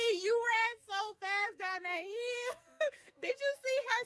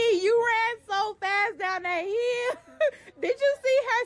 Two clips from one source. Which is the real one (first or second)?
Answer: second